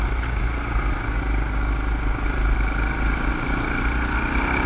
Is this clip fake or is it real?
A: real